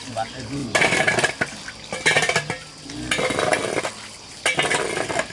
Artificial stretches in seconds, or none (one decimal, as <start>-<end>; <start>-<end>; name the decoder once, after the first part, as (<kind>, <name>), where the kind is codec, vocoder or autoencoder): none